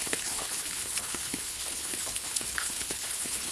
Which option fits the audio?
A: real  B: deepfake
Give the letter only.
B